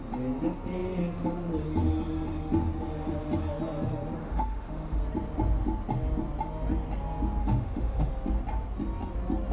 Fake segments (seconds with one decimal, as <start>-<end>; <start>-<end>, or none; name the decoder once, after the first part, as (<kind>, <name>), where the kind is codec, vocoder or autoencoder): 4.2-5.0 (autoencoder, DAC-VAE); 7.4-8.1